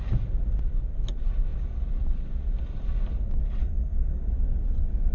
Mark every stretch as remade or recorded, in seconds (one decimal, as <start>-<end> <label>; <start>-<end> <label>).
0.0-3.6 recorded; 3.6-4.2 remade; 4.2-5.1 recorded